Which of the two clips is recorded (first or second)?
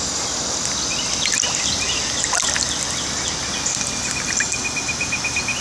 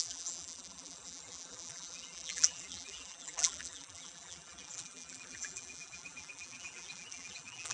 first